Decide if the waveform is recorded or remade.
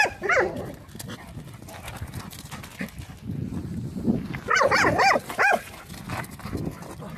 recorded